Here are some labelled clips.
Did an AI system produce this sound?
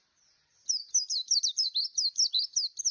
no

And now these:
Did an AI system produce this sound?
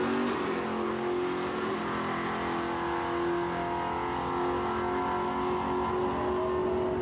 no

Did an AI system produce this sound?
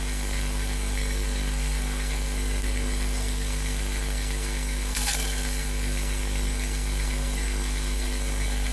yes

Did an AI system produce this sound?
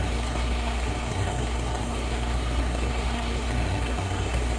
yes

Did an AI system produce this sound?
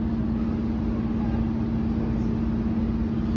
no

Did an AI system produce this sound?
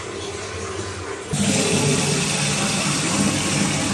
no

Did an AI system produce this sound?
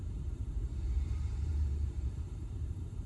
yes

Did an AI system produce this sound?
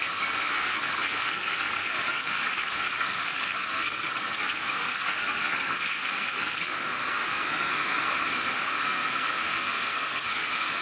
yes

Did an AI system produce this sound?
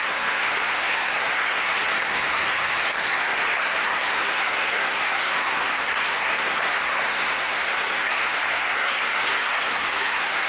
yes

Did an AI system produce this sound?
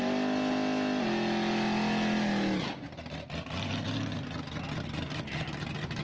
no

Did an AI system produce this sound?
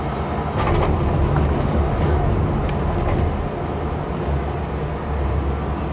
no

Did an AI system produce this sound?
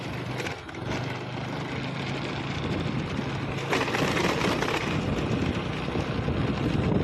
no